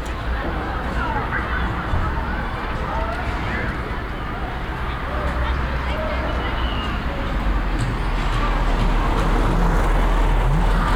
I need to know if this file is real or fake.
real